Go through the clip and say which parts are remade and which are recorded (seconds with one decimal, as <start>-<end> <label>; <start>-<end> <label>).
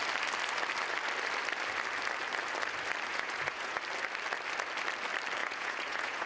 0.0-3.1 recorded; 3.1-3.8 remade; 3.8-5.4 recorded; 5.4-6.3 remade